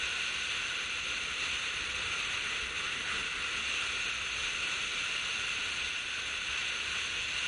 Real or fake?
real